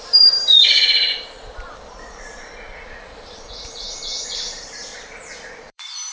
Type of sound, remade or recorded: remade